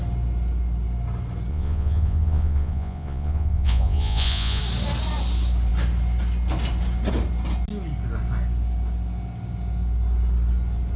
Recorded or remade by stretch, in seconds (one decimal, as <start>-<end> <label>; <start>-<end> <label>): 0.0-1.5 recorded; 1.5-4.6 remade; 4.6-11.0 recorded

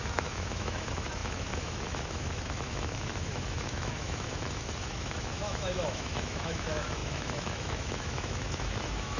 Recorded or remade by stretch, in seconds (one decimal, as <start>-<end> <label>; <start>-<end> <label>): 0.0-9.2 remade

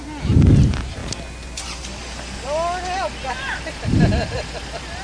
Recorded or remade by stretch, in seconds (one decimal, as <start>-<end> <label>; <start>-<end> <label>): 0.0-1.0 remade; 1.0-3.3 recorded; 3.3-5.0 remade

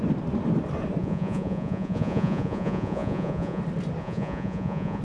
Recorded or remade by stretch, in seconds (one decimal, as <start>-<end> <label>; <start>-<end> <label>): 0.0-1.0 recorded; 1.0-3.6 remade; 3.6-4.0 recorded; 4.0-5.0 remade

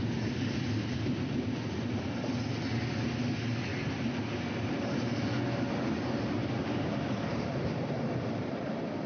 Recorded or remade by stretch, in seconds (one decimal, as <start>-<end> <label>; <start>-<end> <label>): 0.0-3.7 recorded; 3.7-4.2 remade; 4.2-6.4 recorded; 6.4-8.7 remade; 8.7-9.1 recorded

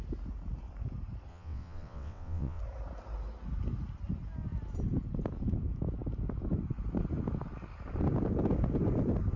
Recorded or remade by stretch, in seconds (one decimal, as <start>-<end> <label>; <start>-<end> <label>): 0.0-1.3 recorded; 1.3-2.6 remade; 2.6-9.4 recorded

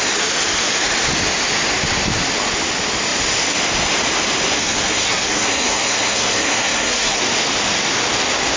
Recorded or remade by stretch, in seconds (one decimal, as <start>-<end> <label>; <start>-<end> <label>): 0.0-4.6 recorded; 4.6-7.2 remade; 7.2-8.6 recorded